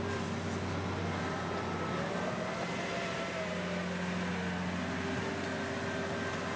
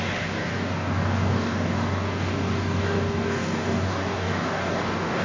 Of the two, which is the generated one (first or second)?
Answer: second